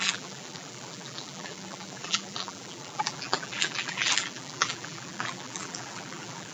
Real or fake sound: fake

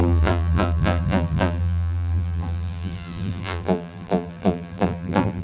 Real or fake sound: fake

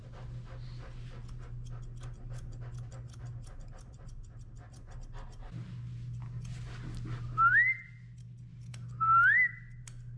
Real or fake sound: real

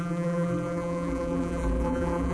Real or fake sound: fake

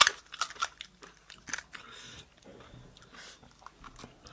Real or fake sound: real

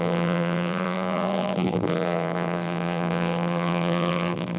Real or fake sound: fake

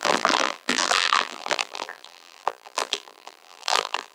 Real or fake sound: fake